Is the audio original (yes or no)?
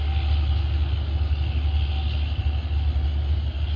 yes